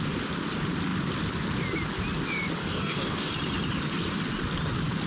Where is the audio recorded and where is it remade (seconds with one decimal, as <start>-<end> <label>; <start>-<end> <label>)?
0.0-2.6 recorded; 2.6-3.3 remade; 3.3-5.1 recorded